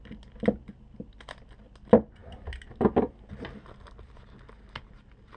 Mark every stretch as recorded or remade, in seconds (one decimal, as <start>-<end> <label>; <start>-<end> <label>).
0.0-5.4 recorded